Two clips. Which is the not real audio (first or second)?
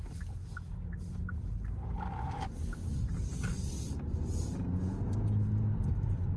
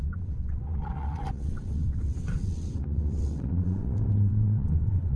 second